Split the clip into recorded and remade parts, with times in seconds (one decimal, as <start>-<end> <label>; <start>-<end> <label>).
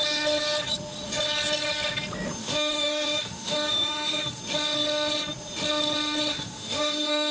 0.0-2.4 recorded; 2.4-4.4 remade; 4.4-6.3 recorded; 6.3-7.3 remade